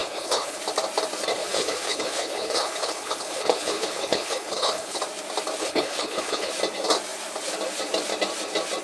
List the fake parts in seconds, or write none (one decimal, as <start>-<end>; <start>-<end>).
0.0-0.6; 1.4-5.0; 5.6-6.5